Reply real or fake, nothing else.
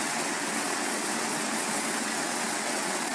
fake